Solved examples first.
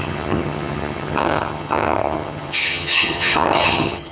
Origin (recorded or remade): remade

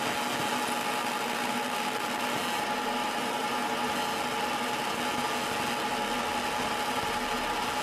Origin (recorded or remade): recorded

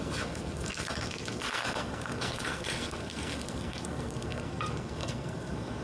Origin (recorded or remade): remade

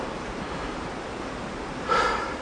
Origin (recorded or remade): remade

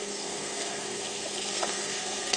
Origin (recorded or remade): remade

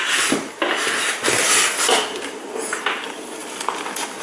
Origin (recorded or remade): recorded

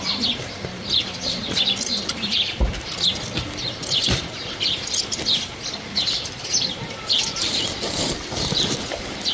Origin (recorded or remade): remade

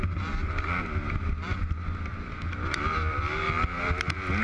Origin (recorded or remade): recorded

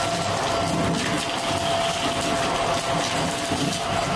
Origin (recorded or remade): recorded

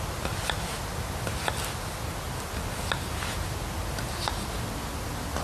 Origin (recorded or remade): recorded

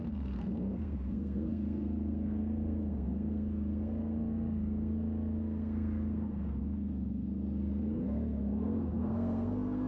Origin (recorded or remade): remade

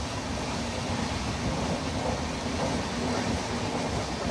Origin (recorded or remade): recorded